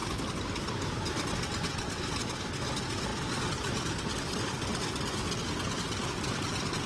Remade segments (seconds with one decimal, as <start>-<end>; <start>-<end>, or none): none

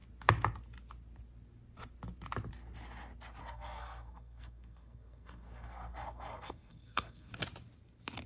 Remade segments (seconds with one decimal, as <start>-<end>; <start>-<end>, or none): 3.4-7.3

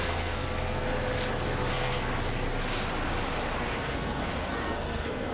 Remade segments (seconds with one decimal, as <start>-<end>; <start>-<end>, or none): 0.0-0.9; 1.7-2.1; 3.7-5.3

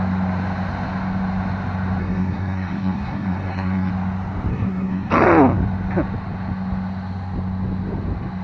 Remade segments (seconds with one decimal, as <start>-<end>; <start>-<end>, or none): 2.0-3.9; 4.5-5.1

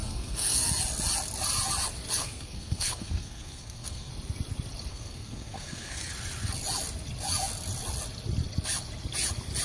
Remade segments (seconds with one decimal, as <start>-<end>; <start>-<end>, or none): 0.0-0.7; 2.2-4.1; 4.9-6.1